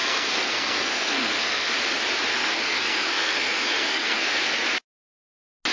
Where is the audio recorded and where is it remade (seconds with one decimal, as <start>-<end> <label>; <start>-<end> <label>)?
0.0-1.7 remade; 1.7-2.3 recorded; 2.3-4.6 remade; 4.6-5.7 recorded